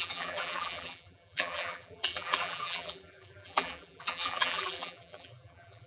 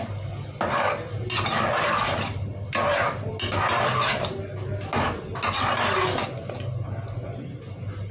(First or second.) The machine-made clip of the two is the first